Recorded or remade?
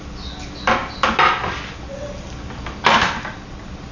recorded